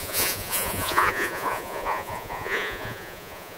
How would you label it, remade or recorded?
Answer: remade